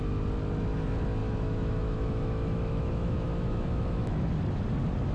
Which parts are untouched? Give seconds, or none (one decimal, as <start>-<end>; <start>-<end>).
0.0-1.2; 4.3-5.1